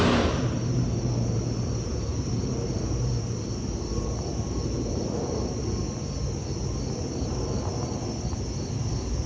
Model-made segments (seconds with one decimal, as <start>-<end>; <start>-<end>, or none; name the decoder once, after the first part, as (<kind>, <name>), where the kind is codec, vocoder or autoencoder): 2.1-5.8 (vocoder, BigVGAN v2)